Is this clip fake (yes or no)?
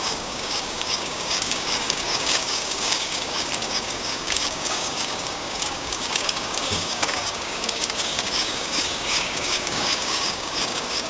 yes